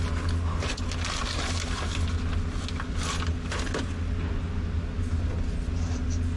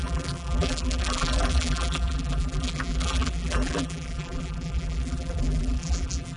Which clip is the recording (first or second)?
first